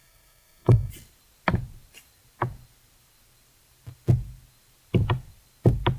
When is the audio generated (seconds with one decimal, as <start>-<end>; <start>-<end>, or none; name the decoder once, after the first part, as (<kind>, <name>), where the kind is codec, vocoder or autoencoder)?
0.0-0.9 (codec, SNAC)